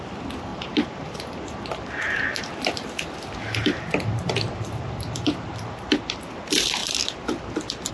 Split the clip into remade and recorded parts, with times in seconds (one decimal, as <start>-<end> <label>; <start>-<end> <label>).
0.0-0.5 recorded; 0.5-3.1 remade; 3.1-7.9 recorded